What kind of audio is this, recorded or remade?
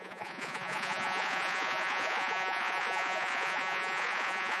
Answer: remade